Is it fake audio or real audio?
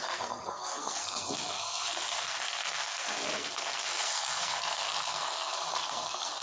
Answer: fake